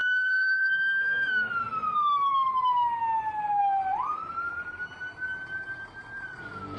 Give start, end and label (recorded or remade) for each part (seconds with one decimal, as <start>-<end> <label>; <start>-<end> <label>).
0.0-1.5 remade; 1.5-6.8 recorded